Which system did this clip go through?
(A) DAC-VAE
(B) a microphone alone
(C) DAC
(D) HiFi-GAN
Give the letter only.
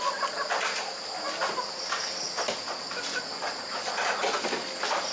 B